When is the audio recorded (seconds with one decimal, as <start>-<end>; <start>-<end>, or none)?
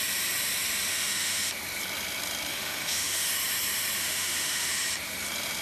0.0-0.9; 1.5-2.5; 3.3-4.0; 4.7-5.6